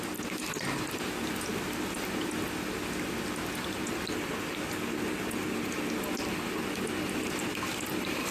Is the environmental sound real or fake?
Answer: real